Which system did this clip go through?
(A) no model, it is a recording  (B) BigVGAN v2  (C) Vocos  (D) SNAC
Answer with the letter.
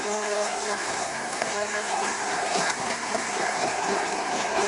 D